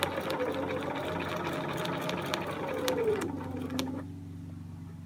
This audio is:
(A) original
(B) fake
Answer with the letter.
A